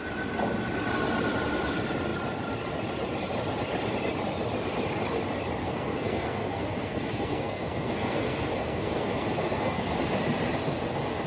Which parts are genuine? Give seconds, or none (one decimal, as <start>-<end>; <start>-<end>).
0.0-5.6; 9.8-11.3